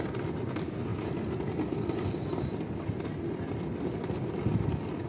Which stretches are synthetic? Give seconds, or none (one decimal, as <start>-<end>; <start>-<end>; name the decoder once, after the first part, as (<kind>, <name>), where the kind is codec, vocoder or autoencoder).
none